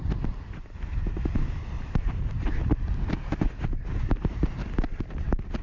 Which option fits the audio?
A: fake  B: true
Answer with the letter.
B